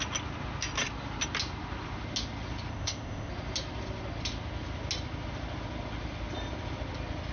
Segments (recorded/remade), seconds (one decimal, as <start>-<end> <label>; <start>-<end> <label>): 0.0-2.7 recorded; 2.7-3.3 remade; 3.3-7.3 recorded